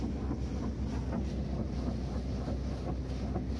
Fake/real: real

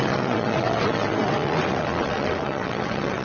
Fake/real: fake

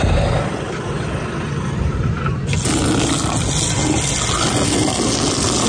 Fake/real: real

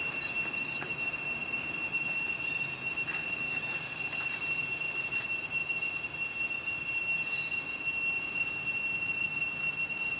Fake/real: real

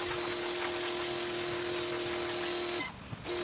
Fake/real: real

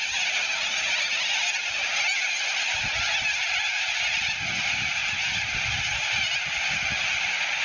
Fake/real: real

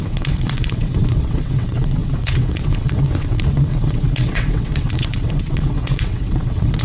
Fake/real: fake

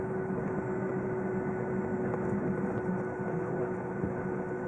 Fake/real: real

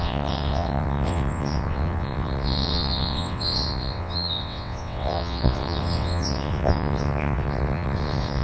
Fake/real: fake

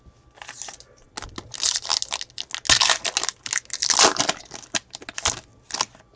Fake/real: real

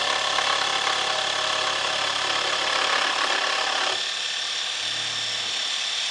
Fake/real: real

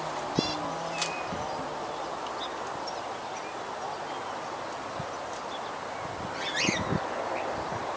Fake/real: real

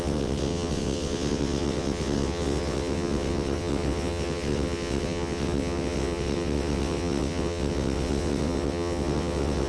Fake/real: fake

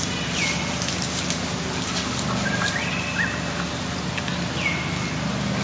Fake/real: real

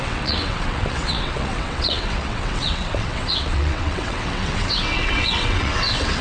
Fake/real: fake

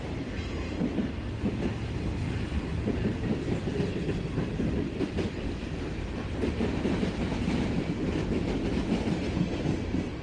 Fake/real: real